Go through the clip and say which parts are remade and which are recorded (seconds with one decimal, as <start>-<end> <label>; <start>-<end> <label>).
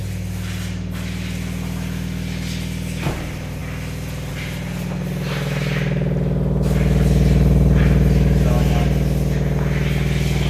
0.0-10.5 recorded